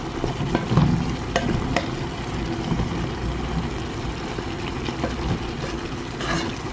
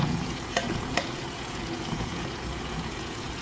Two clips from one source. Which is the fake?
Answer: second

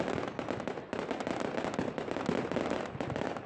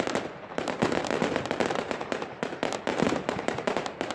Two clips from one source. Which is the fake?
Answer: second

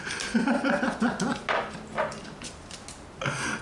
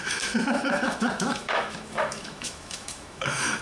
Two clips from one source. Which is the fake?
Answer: second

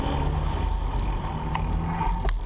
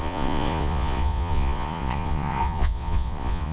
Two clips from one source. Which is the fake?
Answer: second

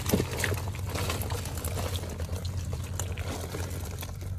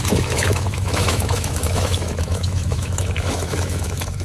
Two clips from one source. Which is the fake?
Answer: second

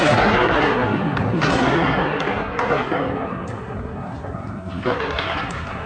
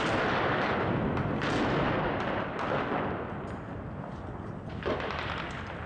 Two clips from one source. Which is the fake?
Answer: first